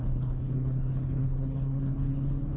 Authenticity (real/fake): fake